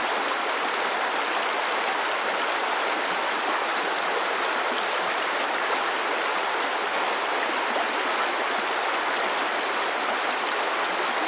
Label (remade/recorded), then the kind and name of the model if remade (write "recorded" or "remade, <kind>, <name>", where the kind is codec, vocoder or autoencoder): recorded